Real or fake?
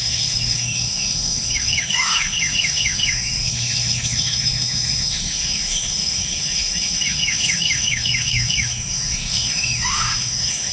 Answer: fake